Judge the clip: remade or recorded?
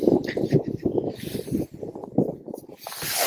recorded